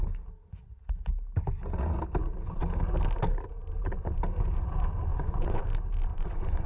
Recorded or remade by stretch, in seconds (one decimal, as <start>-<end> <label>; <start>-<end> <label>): 0.0-5.1 recorded; 5.1-5.6 remade; 5.6-6.1 recorded; 6.1-6.7 remade